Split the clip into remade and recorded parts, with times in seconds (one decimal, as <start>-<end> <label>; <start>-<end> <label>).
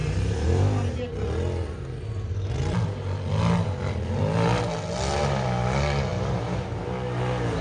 0.0-7.6 recorded